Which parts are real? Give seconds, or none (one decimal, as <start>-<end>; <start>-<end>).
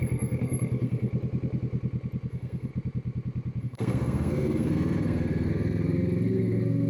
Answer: 1.1-2.3; 2.7-3.6